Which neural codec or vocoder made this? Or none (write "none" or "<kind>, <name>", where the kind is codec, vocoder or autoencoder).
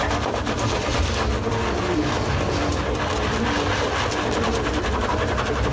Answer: none